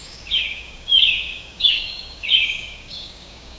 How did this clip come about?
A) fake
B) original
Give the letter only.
A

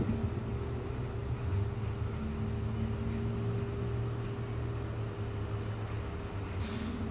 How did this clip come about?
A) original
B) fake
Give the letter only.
A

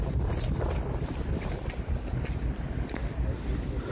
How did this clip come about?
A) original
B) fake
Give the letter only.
A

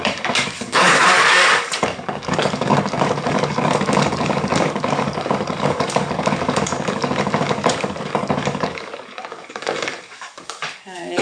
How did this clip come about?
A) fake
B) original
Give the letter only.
A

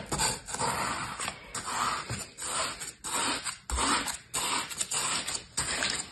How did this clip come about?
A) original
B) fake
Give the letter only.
A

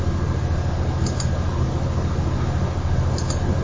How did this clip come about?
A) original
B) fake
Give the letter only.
A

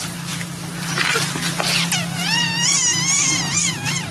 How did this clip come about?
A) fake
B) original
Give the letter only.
B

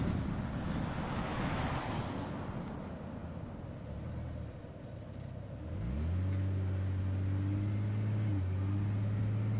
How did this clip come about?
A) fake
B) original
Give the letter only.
B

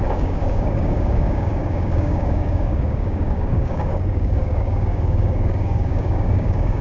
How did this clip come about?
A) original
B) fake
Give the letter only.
B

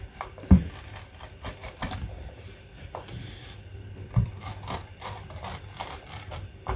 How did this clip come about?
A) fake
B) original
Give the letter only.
B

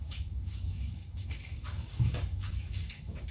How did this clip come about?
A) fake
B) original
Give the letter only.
A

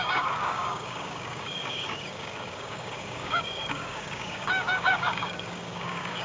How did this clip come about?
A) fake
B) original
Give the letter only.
A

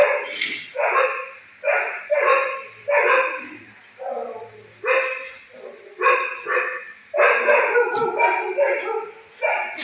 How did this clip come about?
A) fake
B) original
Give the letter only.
B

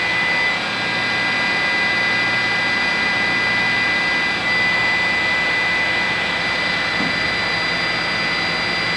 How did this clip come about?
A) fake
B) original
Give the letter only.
B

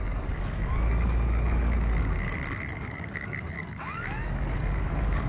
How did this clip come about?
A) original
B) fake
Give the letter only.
B